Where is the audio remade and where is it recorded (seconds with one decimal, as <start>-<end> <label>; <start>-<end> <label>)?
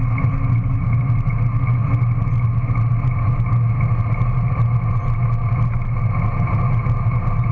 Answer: 0.0-7.5 recorded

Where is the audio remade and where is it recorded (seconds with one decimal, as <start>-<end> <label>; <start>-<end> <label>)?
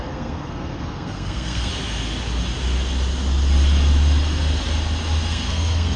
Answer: 0.0-1.7 remade; 1.7-5.3 recorded; 5.3-6.0 remade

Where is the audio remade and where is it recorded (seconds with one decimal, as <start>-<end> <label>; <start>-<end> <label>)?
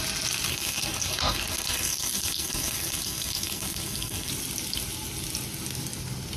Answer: 0.0-0.5 recorded; 0.5-4.3 remade; 4.3-6.4 recorded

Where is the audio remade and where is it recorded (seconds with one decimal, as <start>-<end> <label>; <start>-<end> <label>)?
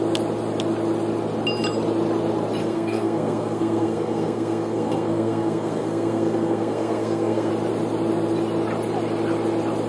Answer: 0.0-2.6 recorded; 2.6-7.5 remade; 7.5-9.9 recorded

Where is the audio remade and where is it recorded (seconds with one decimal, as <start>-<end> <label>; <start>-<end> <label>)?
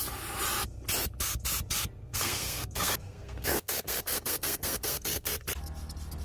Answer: 0.0-2.0 recorded; 2.0-5.3 remade; 5.3-6.2 recorded